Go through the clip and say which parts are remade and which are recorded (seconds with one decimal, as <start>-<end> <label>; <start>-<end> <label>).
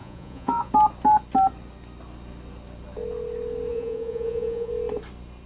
0.0-0.7 remade; 0.7-3.7 recorded; 3.7-4.7 remade; 4.7-5.5 recorded